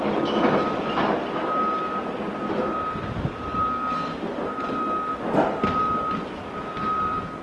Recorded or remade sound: recorded